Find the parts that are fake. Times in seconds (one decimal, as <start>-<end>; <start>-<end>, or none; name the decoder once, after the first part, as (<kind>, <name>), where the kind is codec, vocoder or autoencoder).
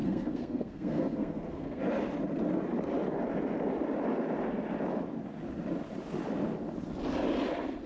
0.0-1.8 (codec, SNAC)